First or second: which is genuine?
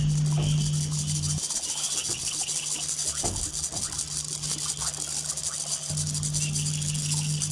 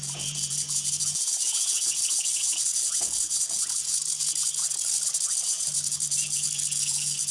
first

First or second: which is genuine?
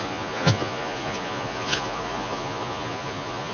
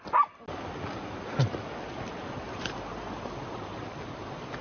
second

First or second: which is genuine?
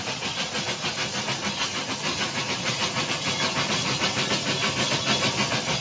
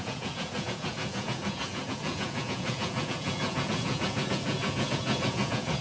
first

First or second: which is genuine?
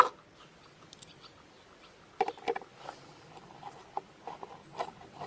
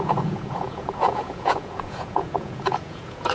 first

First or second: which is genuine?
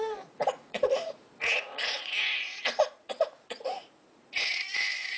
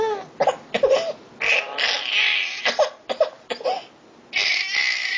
second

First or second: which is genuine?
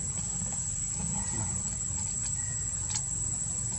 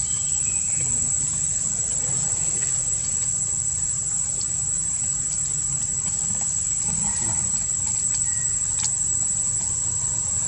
second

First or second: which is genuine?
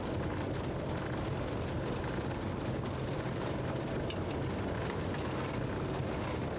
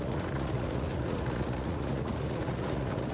first